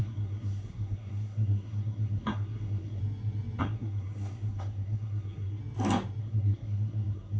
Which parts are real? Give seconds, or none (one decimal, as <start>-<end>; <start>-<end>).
3.0-3.6; 5.6-6.2